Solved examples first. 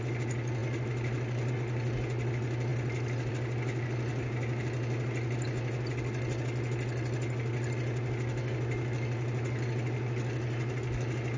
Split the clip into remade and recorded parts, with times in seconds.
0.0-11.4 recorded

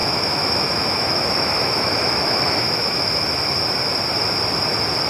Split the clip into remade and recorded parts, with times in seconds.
0.0-3.1 remade; 3.1-5.1 recorded